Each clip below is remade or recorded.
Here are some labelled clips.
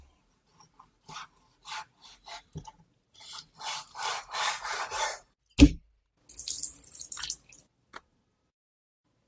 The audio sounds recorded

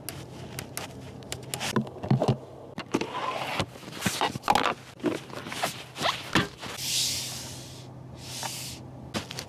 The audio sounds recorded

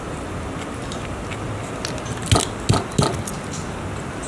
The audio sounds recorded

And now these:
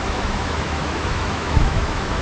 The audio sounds remade